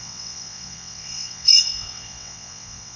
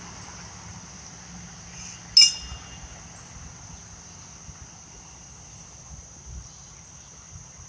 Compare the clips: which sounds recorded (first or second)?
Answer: second